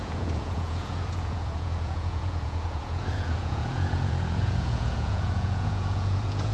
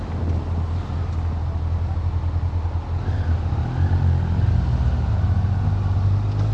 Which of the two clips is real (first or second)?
second